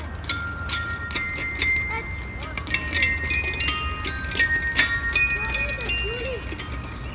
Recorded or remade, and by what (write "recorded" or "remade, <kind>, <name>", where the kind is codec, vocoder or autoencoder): recorded